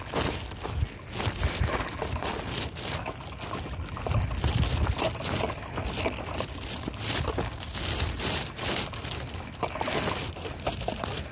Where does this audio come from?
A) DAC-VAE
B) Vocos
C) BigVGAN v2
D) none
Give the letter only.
D